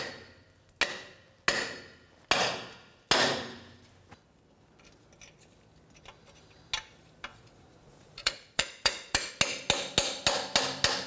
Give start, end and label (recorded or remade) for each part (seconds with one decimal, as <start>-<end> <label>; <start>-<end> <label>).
0.0-7.3 recorded; 7.3-9.3 remade; 9.3-11.1 recorded